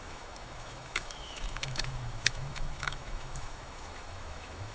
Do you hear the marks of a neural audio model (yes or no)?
yes